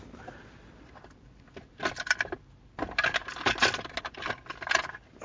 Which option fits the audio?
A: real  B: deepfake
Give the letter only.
A